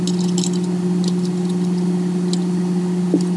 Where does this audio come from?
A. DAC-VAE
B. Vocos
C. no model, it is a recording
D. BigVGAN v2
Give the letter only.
C